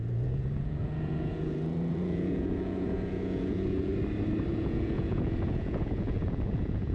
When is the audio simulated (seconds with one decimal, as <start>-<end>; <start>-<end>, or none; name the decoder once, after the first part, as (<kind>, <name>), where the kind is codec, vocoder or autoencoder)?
0.0-3.9 (vocoder, Vocos); 4.5-6.9